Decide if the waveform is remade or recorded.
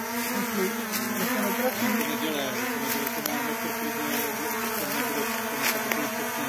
recorded